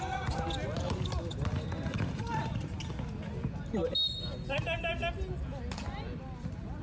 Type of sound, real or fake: real